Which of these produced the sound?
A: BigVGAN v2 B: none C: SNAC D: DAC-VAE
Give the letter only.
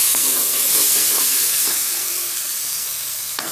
C